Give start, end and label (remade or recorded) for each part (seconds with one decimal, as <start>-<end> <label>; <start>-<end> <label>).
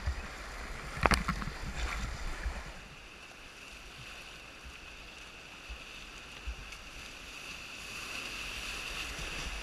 0.0-1.3 recorded; 1.3-1.9 remade; 1.9-9.6 recorded